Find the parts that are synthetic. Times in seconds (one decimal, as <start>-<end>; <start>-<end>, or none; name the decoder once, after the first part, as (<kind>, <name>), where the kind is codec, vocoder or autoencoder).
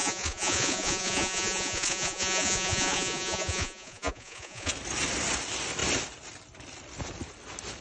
0.0-4.7 (vocoder, Vocos)